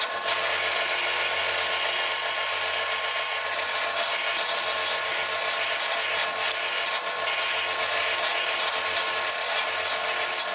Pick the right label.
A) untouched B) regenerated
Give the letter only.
A